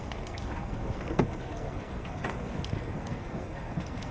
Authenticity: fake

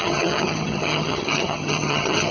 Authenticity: fake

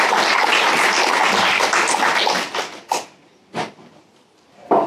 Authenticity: real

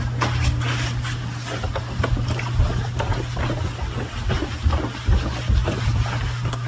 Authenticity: real